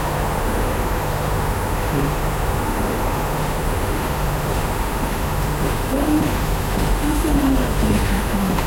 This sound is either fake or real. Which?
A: fake